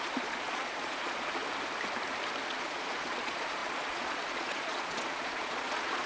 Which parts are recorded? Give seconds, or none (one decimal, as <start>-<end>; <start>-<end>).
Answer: 1.4-2.5